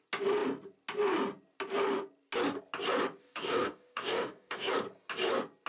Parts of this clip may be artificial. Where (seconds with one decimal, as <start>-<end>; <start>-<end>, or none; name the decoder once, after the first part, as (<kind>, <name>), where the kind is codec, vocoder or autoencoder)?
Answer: 3.2-4.7 (codec, DAC)